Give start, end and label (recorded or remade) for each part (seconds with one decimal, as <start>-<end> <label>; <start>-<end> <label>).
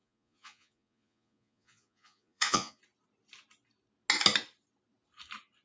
0.0-2.8 remade; 2.8-5.6 recorded